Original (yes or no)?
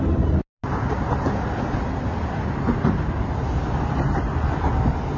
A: yes